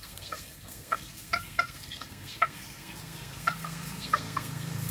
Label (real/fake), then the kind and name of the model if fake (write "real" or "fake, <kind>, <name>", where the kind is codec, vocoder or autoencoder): fake, codec, SNAC